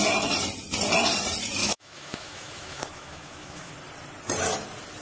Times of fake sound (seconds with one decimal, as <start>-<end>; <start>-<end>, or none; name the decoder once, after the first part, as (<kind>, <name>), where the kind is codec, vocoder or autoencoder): 1.6-3.7 (autoencoder, DAC-VAE)